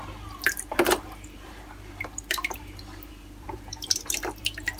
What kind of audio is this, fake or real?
fake